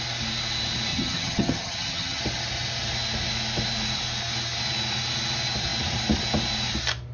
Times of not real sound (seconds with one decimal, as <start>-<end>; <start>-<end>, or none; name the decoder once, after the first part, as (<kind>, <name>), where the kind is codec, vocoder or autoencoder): 0.9-2.2 (vocoder, HiFi-GAN)